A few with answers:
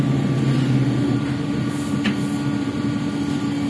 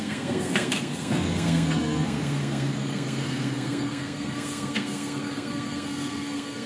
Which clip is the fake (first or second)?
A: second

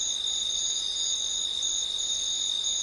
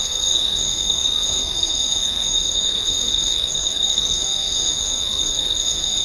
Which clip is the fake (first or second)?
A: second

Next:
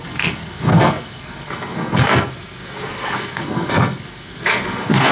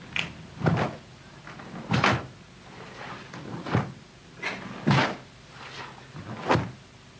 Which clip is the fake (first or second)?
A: first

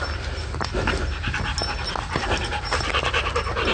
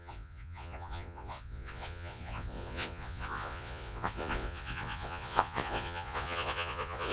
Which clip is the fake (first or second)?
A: second